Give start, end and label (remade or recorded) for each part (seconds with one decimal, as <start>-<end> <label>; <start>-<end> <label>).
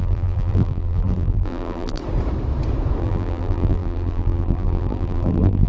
0.0-2.0 remade; 2.0-3.0 recorded; 3.0-5.7 remade